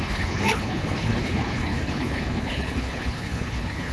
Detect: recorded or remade remade